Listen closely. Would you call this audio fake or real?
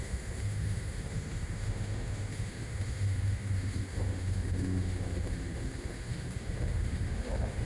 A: fake